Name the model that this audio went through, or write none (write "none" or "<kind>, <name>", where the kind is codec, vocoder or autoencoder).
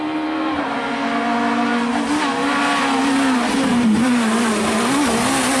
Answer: none